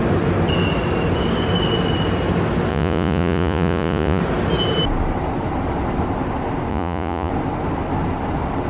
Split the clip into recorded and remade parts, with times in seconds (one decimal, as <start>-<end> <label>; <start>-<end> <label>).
0.0-2.7 recorded; 2.7-4.2 remade; 4.2-6.7 recorded; 6.7-7.3 remade; 7.3-8.7 recorded